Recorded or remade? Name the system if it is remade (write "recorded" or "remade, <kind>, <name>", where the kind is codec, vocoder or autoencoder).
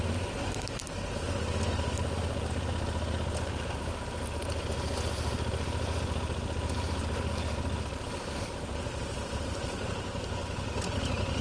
recorded